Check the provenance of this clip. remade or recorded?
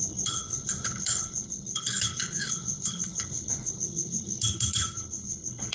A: remade